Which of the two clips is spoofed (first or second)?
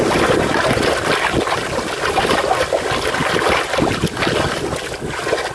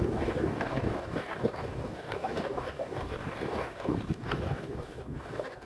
second